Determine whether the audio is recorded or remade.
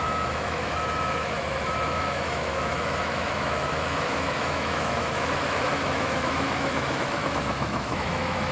remade